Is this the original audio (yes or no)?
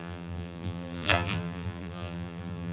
no